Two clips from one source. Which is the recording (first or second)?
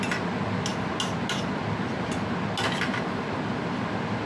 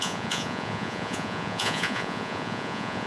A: first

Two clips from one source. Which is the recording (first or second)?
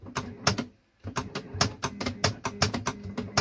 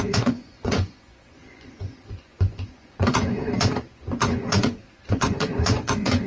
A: first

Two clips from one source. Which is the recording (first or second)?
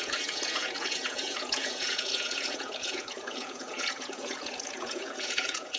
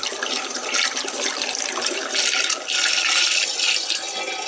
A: second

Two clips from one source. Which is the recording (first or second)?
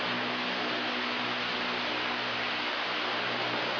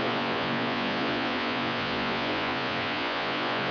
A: first